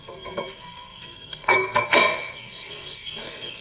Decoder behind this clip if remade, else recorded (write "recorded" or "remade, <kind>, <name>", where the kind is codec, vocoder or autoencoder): remade, codec, SNAC